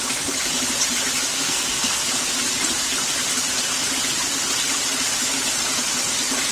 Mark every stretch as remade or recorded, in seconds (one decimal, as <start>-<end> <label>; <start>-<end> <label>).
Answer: 0.0-1.3 recorded; 1.3-2.0 remade; 2.0-6.5 recorded